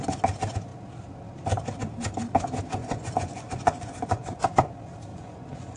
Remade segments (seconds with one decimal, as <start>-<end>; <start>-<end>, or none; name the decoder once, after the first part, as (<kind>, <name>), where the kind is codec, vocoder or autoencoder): 2.8-4.4 (vocoder, Vocos); 5.1-5.8